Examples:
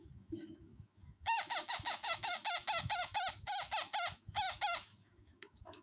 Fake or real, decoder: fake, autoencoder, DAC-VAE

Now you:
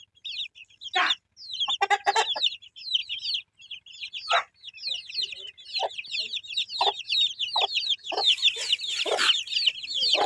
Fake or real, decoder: real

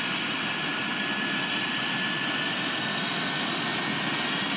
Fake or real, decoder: real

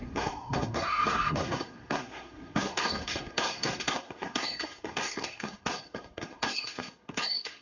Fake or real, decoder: fake, codec, SNAC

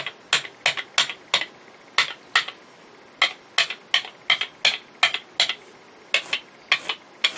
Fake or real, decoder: real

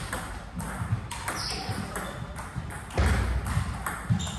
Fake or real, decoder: real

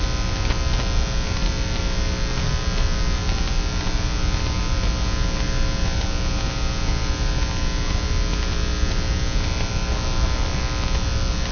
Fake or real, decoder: real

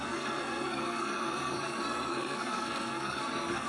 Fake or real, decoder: fake, codec, SNAC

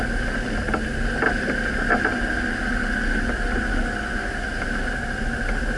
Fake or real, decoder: real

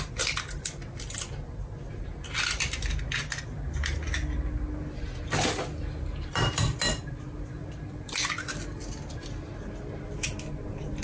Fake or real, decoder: real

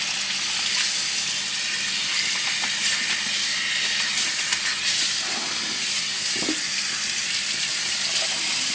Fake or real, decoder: real